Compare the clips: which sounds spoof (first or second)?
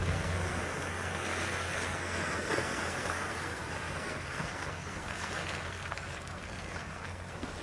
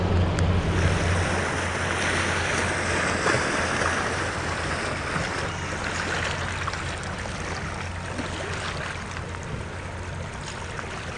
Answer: first